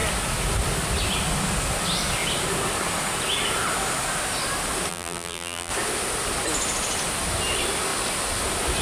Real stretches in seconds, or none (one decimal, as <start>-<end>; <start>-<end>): 0.0-4.9; 5.7-8.8